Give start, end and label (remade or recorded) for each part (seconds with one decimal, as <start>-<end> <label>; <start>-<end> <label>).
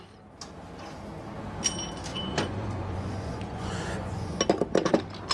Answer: 0.0-2.1 recorded; 2.1-4.4 remade; 4.4-5.3 recorded